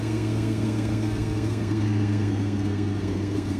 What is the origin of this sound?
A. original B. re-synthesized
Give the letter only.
B